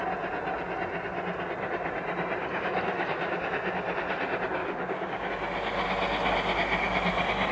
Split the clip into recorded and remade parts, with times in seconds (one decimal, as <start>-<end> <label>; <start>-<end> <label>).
0.0-2.4 recorded; 2.4-3.3 remade; 3.3-4.6 recorded; 4.6-5.3 remade; 5.3-7.5 recorded